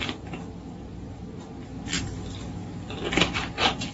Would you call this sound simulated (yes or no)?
no